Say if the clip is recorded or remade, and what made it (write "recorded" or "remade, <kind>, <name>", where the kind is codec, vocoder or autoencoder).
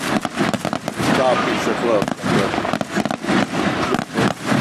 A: recorded